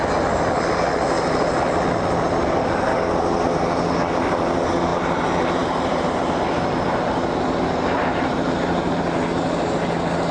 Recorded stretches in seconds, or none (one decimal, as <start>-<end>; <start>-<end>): 0.0-4.9; 6.4-8.1; 8.9-10.3